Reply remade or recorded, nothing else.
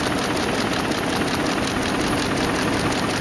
recorded